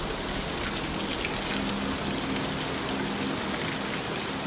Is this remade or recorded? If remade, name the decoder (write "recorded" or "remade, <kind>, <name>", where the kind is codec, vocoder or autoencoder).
recorded